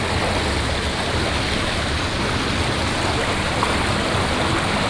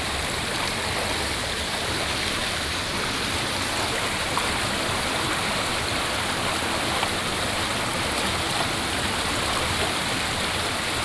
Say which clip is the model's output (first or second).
second